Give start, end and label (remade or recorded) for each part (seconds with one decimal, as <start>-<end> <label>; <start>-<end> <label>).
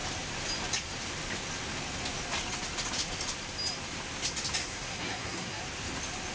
0.0-4.6 recorded; 4.6-5.6 remade; 5.6-6.3 recorded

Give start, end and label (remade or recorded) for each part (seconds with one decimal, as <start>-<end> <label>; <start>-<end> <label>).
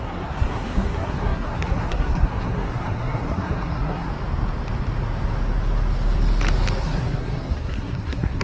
0.0-4.1 remade; 4.1-6.8 recorded; 6.8-8.4 remade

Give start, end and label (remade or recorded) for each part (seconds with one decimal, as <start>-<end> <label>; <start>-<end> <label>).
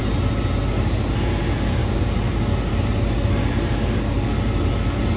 0.0-5.2 recorded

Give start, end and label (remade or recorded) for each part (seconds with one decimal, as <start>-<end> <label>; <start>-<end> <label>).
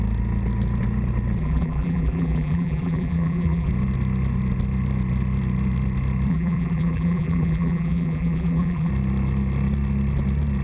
0.0-1.4 recorded; 1.4-3.7 remade; 3.7-6.3 recorded; 6.3-8.9 remade; 8.9-10.6 recorded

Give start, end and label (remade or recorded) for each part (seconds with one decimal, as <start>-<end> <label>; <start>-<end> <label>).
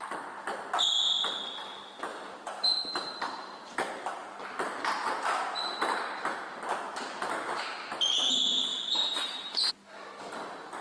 0.0-2.1 recorded; 2.1-4.4 remade; 4.4-8.7 recorded; 8.7-9.7 remade; 9.7-10.8 recorded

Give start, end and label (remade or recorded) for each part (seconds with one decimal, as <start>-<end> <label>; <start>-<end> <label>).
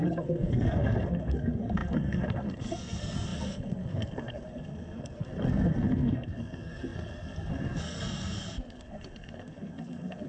0.0-10.3 remade